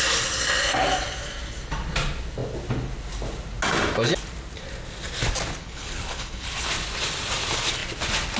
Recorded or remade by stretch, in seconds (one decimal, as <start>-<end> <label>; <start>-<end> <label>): 0.0-5.6 recorded; 5.6-6.7 remade; 6.7-8.4 recorded